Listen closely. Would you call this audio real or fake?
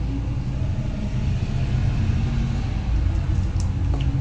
real